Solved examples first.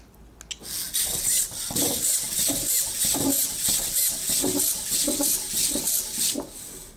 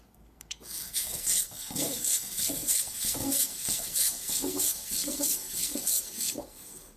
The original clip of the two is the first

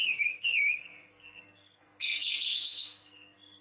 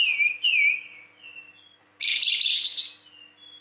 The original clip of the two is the second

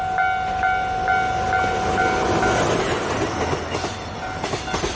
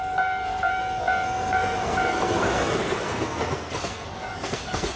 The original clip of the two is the first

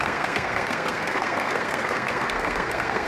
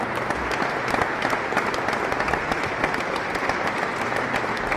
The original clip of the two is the second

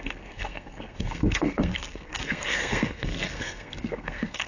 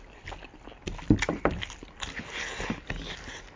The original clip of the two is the second